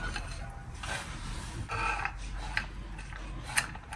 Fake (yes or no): no